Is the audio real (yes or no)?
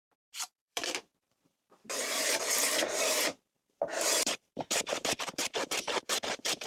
no